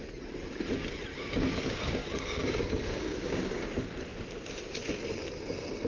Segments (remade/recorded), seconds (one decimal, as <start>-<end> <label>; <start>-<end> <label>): 0.0-1.1 recorded; 1.1-3.6 remade; 3.6-5.9 recorded